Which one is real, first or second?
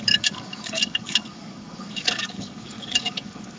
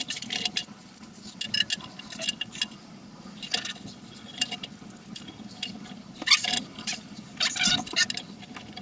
second